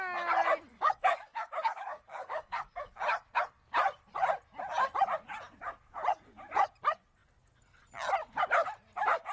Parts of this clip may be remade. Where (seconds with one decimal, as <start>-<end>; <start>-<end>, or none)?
0.7-2.9